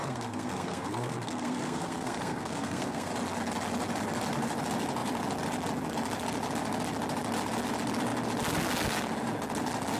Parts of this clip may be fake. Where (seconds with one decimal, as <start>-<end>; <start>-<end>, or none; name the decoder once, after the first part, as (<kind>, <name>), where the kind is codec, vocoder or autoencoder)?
0.0-3.1 (codec, SNAC)